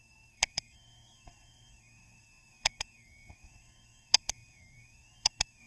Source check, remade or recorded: remade